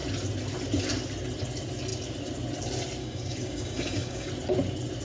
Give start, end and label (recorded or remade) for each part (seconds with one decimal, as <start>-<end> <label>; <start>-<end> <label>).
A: 0.0-3.0 recorded; 3.0-4.3 remade; 4.3-5.0 recorded